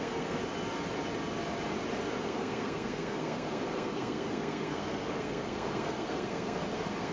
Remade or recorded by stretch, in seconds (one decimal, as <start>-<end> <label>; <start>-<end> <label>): 0.0-0.4 remade; 0.4-2.2 recorded; 2.2-7.1 remade